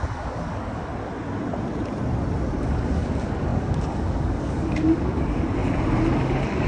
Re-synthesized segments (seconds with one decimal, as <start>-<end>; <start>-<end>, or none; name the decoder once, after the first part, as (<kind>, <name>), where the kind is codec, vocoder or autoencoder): 0.0-0.9 (codec, DAC); 2.6-5.6; 6.2-6.7